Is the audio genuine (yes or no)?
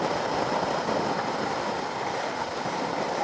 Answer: no